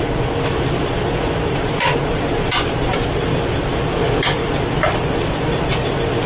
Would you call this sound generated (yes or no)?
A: no